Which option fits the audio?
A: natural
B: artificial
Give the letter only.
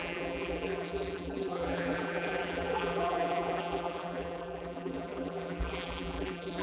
B